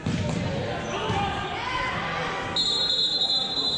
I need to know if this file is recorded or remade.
recorded